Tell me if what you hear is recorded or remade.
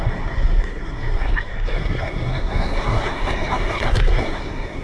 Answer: remade